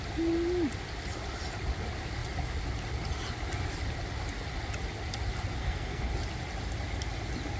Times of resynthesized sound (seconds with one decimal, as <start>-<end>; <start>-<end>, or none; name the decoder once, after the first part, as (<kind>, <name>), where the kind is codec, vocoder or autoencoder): 5.6-6.1 (codec, SNAC)